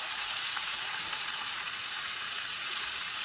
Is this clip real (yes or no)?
no